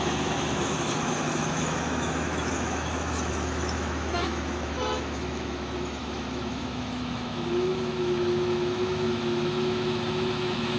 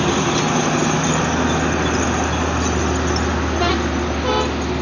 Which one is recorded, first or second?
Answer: second